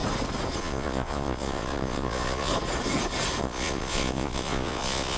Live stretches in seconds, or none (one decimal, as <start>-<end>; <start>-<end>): 0.0-0.6; 2.5-3.4